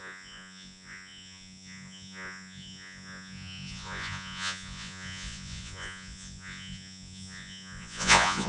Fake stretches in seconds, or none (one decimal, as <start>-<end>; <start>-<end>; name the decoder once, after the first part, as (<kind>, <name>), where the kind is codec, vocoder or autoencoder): 0.0-8.5 (vocoder, Vocos)